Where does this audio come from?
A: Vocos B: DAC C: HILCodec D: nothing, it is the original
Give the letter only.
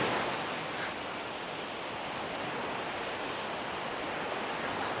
D